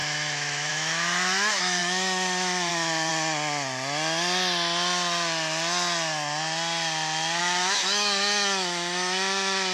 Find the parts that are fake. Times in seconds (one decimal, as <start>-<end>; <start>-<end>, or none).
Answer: 0.0-3.1; 7.4-9.7